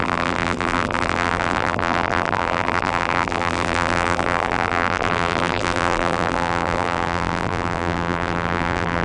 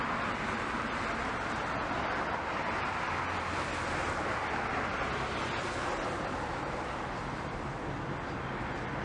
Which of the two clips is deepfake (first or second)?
first